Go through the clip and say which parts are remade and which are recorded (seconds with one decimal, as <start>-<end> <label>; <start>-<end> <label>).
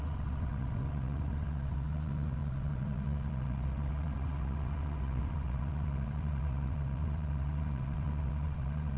0.0-9.0 remade